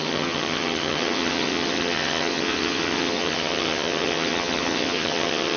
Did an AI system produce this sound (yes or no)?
yes